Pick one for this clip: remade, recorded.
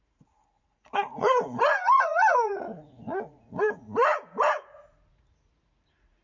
remade